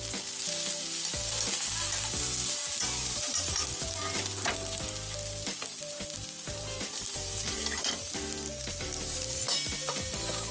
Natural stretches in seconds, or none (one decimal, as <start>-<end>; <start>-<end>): 0.0-3.0; 4.2-6.2; 9.4-10.5